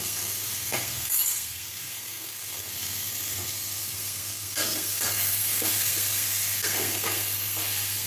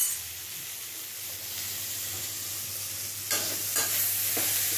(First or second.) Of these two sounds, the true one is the second